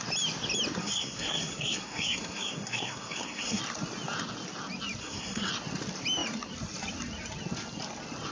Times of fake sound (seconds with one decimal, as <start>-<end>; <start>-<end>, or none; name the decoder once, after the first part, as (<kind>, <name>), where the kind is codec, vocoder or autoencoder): 0.8-3.6 (codec, SNAC); 5.0-5.5